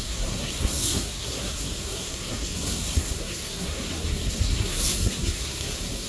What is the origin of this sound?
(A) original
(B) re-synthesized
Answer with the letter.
B